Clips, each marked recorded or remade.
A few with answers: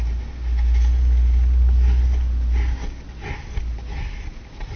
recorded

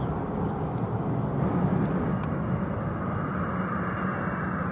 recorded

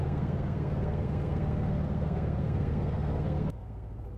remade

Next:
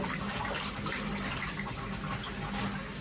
recorded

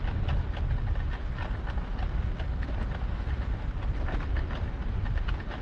recorded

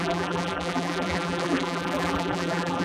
remade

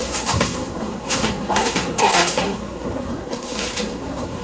remade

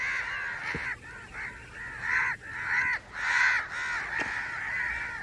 recorded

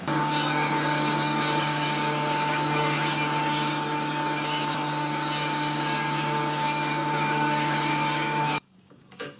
remade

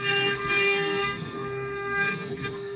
remade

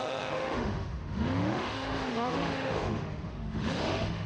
remade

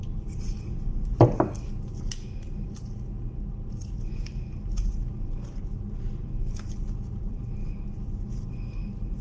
recorded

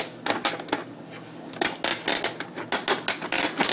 recorded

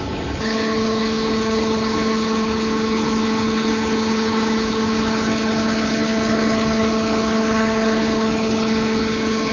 remade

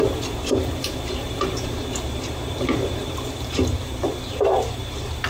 remade